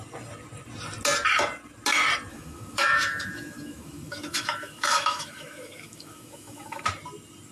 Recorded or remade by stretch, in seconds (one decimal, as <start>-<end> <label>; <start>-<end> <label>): 0.0-2.3 recorded; 2.3-6.8 remade; 6.8-7.5 recorded